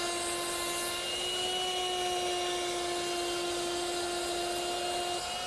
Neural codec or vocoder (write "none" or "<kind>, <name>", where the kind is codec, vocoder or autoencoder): none